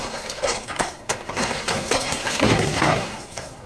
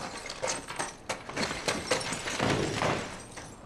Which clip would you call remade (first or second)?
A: first